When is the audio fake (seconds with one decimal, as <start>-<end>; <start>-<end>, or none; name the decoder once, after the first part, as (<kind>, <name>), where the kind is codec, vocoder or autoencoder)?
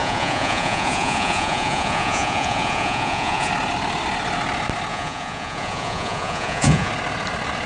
0.0-3.5 (vocoder, Vocos); 4.9-6.9